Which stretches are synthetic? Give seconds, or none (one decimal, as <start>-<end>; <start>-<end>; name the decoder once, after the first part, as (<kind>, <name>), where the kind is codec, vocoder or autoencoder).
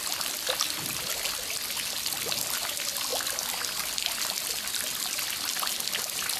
none